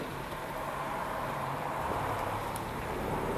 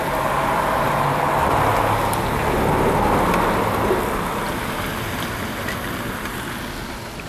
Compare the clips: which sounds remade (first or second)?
first